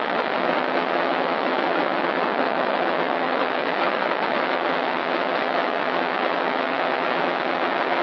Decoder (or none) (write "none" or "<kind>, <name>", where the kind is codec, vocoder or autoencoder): vocoder, WaveNeXt